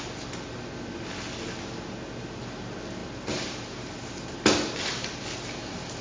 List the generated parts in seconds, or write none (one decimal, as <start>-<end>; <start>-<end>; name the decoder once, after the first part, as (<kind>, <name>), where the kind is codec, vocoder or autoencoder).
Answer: 3.0-3.6 (vocoder, BigVGAN v2)